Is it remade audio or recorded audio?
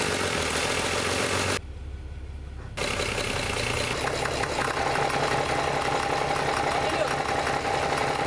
recorded